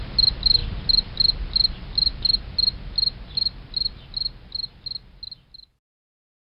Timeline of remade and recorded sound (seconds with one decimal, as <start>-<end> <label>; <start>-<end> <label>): 0.0-6.5 recorded